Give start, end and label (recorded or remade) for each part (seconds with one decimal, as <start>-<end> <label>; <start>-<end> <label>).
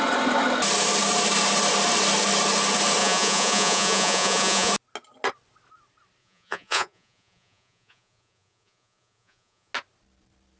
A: 0.0-3.0 recorded; 3.0-4.7 remade; 4.7-6.2 recorded; 6.2-9.7 remade; 9.7-10.6 recorded